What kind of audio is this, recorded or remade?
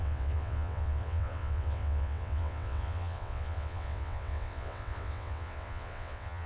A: remade